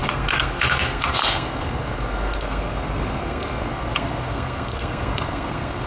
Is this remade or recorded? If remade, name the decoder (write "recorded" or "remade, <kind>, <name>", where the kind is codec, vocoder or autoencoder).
remade, codec, SNAC